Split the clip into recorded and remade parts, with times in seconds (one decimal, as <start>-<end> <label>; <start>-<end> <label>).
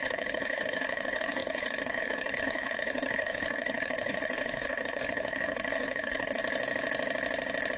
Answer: 0.0-6.4 remade; 6.4-7.8 recorded